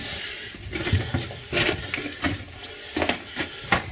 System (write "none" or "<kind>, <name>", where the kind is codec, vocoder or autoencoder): none